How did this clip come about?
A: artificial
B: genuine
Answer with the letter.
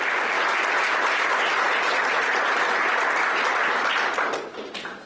B